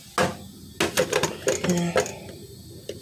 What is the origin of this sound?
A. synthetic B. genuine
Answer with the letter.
B